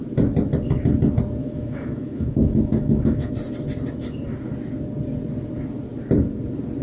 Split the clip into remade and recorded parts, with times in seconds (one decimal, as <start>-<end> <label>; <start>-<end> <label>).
0.0-1.4 recorded; 1.4-3.3 remade; 3.3-6.8 recorded